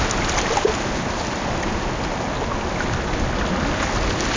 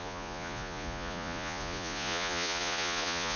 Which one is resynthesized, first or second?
second